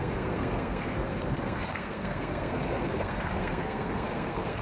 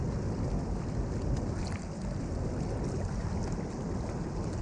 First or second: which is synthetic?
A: first